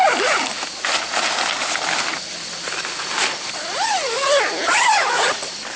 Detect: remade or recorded recorded